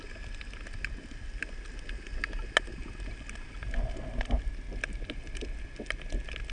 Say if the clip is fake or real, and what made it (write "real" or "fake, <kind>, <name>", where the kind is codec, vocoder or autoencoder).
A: real